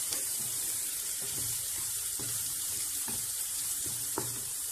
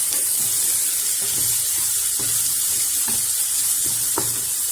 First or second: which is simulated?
first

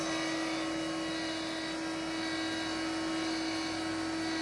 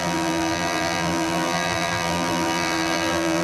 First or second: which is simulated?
second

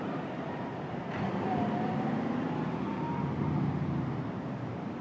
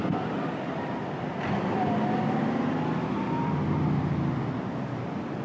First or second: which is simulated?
first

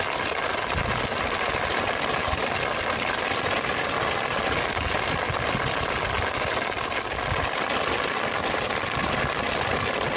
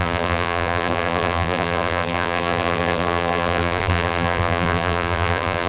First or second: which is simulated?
second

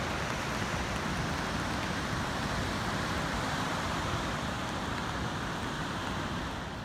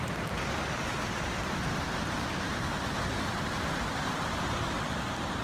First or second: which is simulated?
first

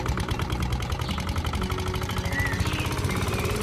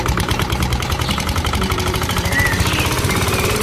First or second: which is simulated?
second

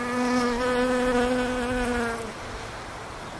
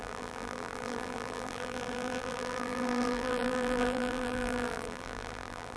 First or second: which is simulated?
second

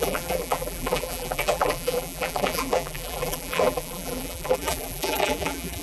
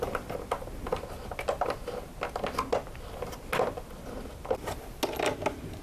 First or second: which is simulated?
first